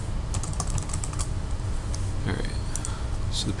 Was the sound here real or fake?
real